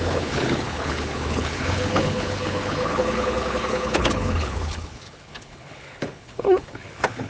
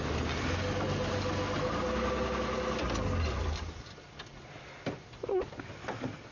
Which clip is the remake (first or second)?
first